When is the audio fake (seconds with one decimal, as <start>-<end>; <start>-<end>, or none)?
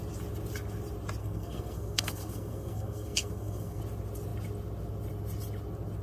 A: 1.2-3.8